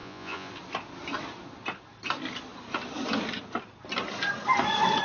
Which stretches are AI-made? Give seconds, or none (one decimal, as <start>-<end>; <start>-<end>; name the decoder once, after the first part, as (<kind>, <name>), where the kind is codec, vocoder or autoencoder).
0.0-0.5 (vocoder, Vocos)